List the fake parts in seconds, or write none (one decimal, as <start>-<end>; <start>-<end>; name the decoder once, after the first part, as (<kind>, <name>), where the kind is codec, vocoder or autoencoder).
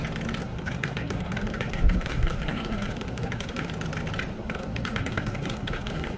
0.4-3.7 (codec, SNAC); 4.3-6.2